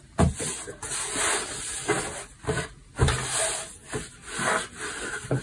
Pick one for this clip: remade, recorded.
recorded